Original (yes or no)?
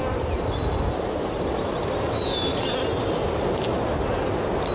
yes